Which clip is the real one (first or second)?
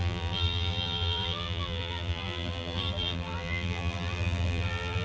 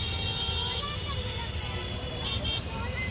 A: second